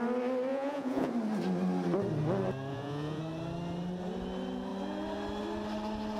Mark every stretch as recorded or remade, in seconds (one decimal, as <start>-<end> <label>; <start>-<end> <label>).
0.0-0.5 recorded; 0.5-1.1 remade; 1.1-2.7 recorded; 2.7-3.2 remade; 3.2-6.2 recorded